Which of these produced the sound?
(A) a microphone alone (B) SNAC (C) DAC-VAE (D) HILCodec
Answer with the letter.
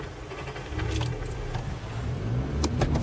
A